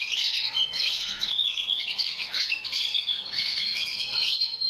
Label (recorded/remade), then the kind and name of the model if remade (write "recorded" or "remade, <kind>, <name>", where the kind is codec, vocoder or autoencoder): remade, codec, SNAC